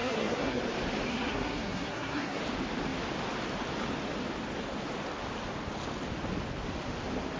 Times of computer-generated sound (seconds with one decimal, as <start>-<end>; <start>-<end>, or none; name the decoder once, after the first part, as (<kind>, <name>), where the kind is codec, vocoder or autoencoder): 0.0-0.6 (codec, SNAC); 1.1-2.4